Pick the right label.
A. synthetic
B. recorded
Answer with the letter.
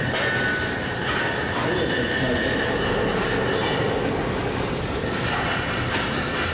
B